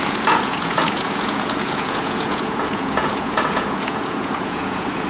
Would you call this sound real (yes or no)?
no